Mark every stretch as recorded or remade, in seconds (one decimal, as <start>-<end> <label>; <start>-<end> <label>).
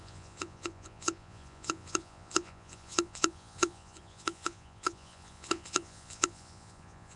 0.0-7.2 remade